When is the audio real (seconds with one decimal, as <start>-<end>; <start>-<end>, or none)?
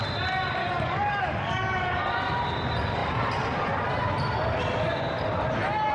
0.0-0.6; 1.9-5.9